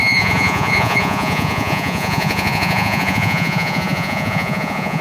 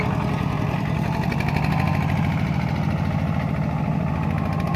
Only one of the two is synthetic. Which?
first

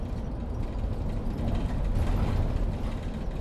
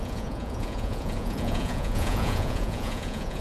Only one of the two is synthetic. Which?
second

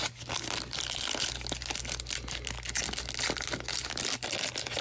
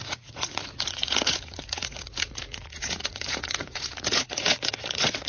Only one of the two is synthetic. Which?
second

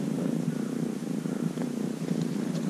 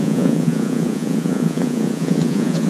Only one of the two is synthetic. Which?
second